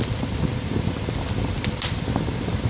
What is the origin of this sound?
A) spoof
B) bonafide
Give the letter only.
B